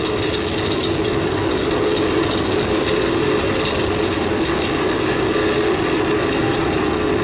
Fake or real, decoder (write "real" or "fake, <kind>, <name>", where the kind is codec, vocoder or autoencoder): real